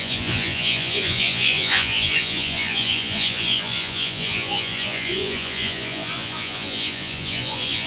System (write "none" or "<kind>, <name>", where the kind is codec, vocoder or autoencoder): vocoder, Vocos